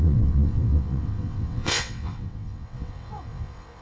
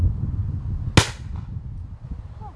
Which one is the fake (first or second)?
first